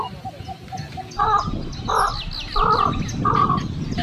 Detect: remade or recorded recorded